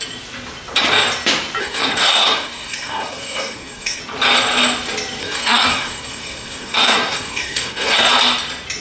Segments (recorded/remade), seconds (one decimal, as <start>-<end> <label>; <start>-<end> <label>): 0.0-1.6 recorded; 1.6-4.0 remade; 4.0-5.2 recorded; 5.2-8.1 remade; 8.1-8.8 recorded